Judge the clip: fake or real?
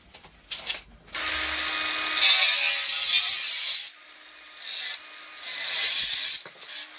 real